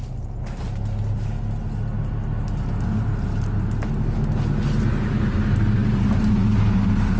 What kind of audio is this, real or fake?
real